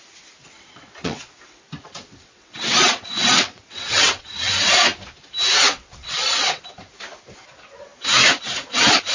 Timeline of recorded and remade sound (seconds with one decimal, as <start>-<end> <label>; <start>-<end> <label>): 0.0-0.4 recorded; 0.4-1.6 remade; 1.6-2.1 recorded; 2.1-4.5 remade; 4.5-5.6 recorded; 5.6-6.6 remade; 6.6-9.1 recorded